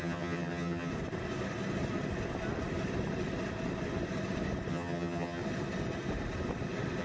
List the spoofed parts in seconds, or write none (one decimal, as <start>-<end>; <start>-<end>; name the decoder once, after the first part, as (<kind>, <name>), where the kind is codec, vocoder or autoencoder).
0.0-0.9 (vocoder, HiFi-GAN); 4.7-5.4